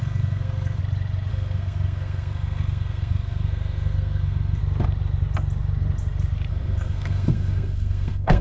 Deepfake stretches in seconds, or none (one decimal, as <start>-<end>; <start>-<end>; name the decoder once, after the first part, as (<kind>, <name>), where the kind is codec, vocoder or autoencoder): 0.0-0.8 (codec, SNAC); 1.3-4.6; 6.5-8.4